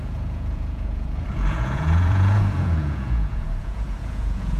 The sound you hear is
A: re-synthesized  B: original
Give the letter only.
A